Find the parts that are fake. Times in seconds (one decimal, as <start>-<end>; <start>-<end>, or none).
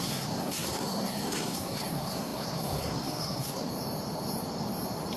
0.0-3.7